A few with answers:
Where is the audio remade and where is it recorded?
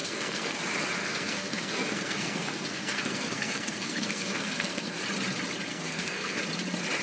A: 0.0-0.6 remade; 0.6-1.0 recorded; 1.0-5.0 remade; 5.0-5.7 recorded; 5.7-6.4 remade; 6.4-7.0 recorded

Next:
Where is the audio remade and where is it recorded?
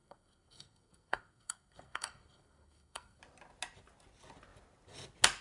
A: 0.0-3.2 remade; 3.2-5.4 recorded